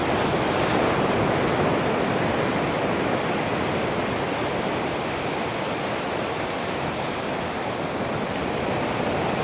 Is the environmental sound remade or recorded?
recorded